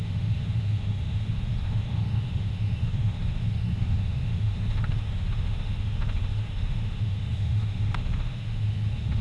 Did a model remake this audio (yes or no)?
yes